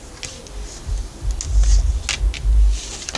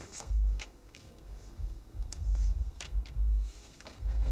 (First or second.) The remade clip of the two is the second